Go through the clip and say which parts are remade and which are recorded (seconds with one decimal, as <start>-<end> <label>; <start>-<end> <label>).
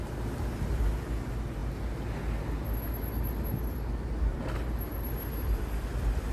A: 0.0-6.3 recorded